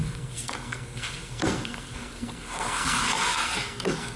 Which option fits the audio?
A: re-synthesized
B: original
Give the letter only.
A